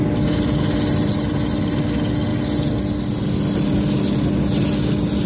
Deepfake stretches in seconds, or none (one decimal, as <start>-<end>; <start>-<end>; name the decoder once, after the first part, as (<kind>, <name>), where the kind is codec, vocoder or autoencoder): none